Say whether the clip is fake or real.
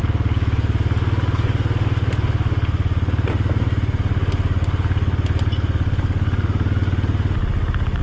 real